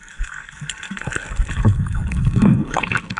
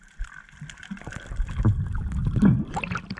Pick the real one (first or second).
second